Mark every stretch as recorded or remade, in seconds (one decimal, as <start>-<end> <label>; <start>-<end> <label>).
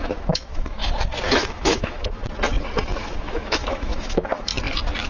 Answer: 0.0-0.8 remade; 0.8-1.3 recorded; 1.3-2.2 remade; 2.2-2.9 recorded; 2.9-4.5 remade; 4.5-5.1 recorded